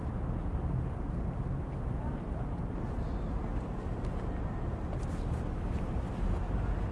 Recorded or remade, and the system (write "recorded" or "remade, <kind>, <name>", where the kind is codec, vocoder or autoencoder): recorded